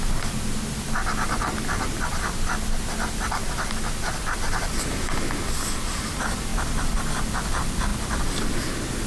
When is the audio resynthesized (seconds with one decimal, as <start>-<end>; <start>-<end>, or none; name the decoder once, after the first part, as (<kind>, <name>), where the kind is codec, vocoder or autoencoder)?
none